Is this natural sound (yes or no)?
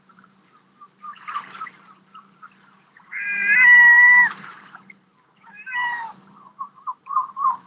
no